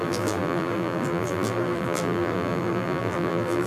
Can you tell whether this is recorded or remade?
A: remade